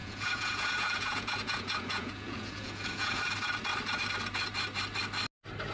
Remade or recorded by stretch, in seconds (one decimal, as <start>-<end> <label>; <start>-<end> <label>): 0.0-3.2 remade; 3.2-5.7 recorded